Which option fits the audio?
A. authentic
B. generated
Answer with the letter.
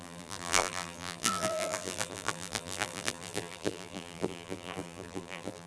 B